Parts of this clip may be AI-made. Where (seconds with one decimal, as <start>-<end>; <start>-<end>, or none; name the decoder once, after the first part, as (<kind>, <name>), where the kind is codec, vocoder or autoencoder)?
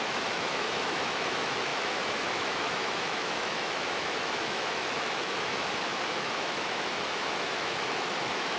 0.0-8.6 (autoencoder, DAC-VAE)